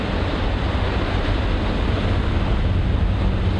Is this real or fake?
real